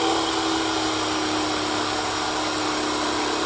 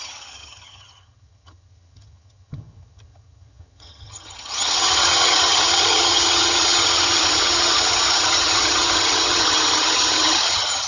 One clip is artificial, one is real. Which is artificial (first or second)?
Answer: second